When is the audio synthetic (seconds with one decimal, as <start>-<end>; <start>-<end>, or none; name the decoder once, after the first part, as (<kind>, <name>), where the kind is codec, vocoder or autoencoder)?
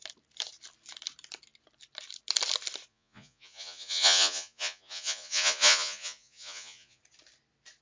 2.9-7.0 (vocoder, Vocos)